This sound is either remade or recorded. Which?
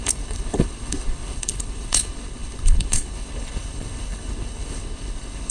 remade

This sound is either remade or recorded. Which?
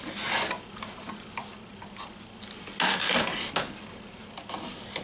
recorded